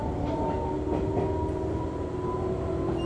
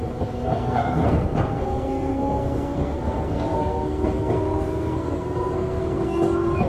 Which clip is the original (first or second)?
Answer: first